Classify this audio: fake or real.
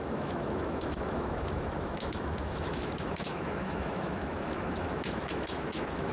fake